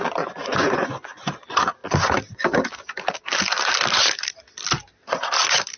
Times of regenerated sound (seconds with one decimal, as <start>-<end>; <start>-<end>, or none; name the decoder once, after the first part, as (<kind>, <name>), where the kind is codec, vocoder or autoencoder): 0.5-1.3 (vocoder, Vocos)